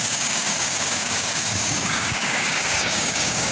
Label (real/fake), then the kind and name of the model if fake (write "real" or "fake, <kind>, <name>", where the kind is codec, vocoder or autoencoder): fake, codec, DAC